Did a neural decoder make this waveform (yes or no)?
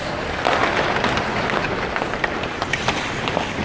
no